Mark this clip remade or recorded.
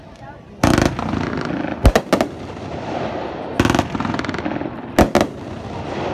recorded